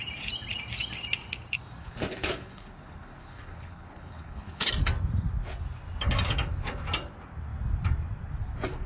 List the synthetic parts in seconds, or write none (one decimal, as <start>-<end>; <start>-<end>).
1.8-4.7